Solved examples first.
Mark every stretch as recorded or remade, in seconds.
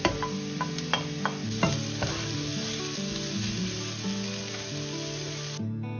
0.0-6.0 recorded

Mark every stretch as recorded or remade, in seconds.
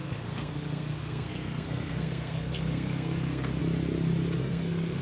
0.0-3.6 remade; 3.6-4.4 recorded; 4.4-5.0 remade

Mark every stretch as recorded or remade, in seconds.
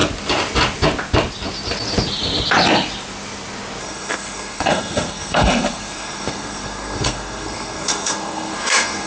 0.0-3.8 recorded; 3.8-9.1 remade